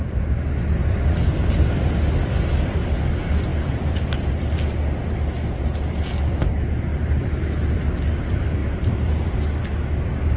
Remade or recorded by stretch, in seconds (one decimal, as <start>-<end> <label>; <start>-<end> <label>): 0.0-3.5 recorded; 3.5-4.3 remade; 4.3-6.9 recorded; 6.9-7.8 remade; 7.8-8.6 recorded; 8.6-9.6 remade; 9.6-10.4 recorded